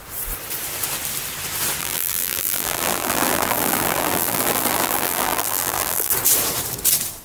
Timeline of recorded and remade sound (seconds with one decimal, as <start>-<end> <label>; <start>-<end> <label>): 0.0-1.8 recorded; 1.8-6.1 remade; 6.1-7.2 recorded